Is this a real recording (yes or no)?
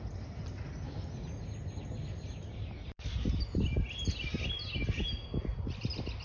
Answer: yes